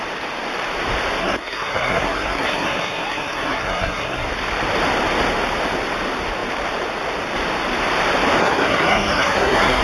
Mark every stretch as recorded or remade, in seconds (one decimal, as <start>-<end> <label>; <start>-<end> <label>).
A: 0.0-1.2 recorded; 1.2-4.3 remade; 4.3-8.4 recorded; 8.4-9.8 remade